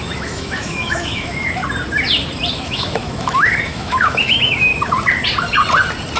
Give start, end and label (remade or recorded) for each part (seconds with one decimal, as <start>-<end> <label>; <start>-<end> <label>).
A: 0.0-1.6 remade; 1.6-2.5 recorded; 2.5-4.7 remade; 4.7-6.2 recorded